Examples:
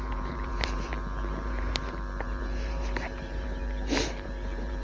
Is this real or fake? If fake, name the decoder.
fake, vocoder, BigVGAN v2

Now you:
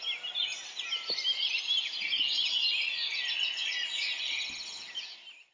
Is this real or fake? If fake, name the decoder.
real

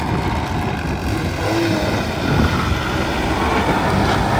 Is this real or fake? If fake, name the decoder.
real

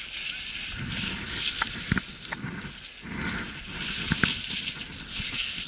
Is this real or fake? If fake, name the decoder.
real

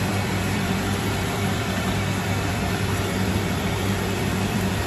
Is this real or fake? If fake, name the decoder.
fake, vocoder, BigVGAN v2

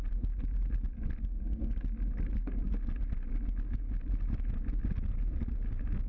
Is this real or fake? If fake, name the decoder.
real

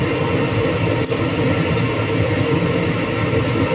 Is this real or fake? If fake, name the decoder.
real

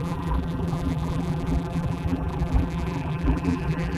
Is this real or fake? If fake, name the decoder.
fake, vocoder, BigVGAN v2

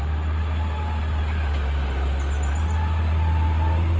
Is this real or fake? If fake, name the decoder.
real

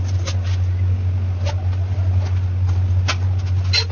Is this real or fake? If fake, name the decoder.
real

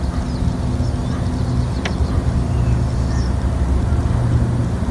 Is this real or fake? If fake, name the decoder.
real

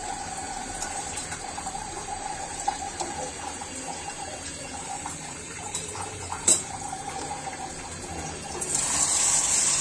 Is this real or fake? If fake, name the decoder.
fake, vocoder, BigVGAN v2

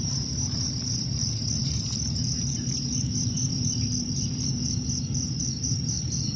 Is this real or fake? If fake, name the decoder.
fake, vocoder, BigVGAN v2